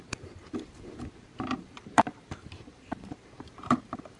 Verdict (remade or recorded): remade